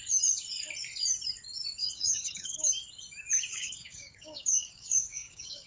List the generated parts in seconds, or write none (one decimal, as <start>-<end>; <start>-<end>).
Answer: 1.8-2.7; 3.5-5.7